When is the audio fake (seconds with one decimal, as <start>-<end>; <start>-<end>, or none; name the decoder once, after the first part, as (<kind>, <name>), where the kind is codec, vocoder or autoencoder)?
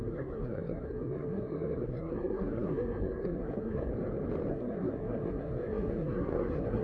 0.0-3.9 (codec, SNAC); 4.5-6.8